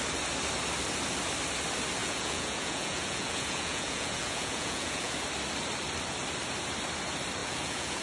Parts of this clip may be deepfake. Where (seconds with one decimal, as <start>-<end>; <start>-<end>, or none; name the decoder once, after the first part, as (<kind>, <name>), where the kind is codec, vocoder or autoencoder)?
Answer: 2.0-5.2 (vocoder, Vocos); 7.4-8.0